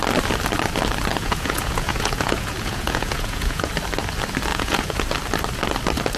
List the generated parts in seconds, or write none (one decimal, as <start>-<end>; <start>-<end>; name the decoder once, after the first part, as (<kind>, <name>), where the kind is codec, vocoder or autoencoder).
1.1-3.7 (vocoder, Vocos); 4.5-5.0